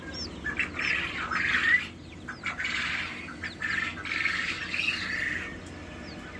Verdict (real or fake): real